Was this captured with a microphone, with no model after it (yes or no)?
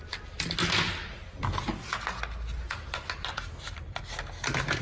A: yes